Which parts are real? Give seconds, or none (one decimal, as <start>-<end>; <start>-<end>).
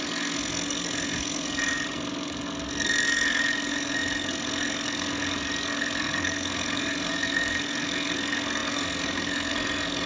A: none